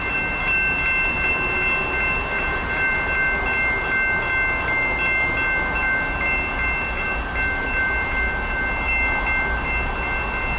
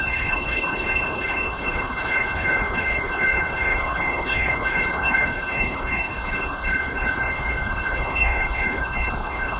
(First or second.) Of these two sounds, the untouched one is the first